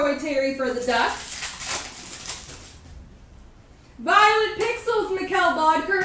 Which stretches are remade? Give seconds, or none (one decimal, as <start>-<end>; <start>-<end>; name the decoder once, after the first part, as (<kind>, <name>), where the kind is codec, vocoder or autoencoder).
4.7-5.4 (vocoder, BigVGAN v2)